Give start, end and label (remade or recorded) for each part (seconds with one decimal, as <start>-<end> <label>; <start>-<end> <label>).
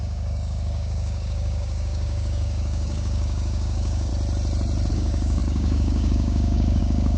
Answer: 0.0-4.1 remade; 4.1-4.9 recorded; 4.9-7.2 remade